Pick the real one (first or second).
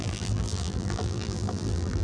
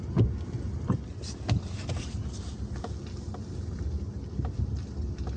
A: second